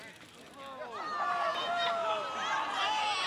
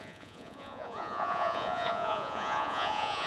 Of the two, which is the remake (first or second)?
second